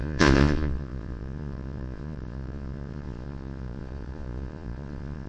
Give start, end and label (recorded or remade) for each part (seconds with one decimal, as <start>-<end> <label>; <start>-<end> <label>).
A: 0.0-5.3 remade